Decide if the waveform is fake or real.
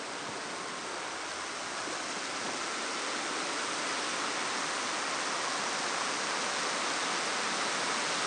real